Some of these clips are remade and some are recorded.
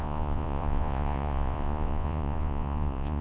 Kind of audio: remade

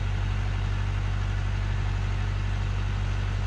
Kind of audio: recorded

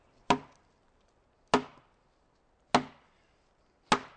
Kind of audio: recorded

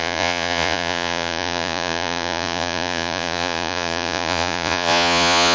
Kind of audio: remade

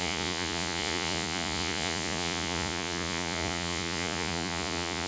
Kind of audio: remade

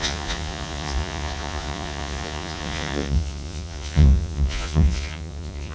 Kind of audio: remade